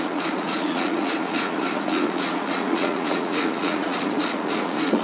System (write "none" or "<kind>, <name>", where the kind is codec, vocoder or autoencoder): vocoder, Vocos